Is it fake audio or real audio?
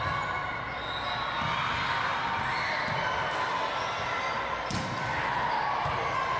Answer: real